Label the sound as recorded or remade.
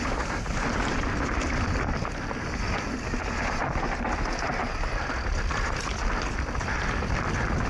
recorded